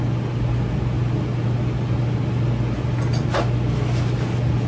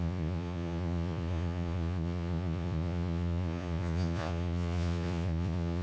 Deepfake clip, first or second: second